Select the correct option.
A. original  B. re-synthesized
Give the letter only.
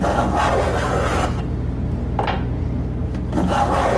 A